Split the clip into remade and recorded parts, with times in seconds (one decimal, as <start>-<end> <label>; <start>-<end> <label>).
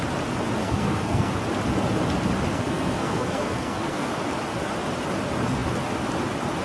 0.0-0.6 recorded; 0.6-1.3 remade; 1.3-2.5 recorded; 2.5-4.1 remade; 4.1-6.6 recorded